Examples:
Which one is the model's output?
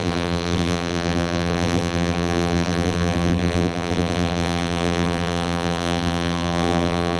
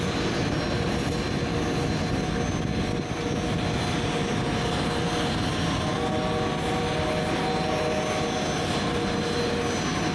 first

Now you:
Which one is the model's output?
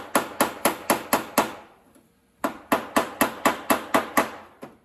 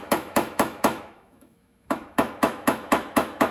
second